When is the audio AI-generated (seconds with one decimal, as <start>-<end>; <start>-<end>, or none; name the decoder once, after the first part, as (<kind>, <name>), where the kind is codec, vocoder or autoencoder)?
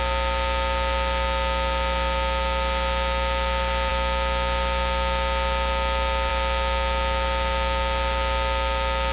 none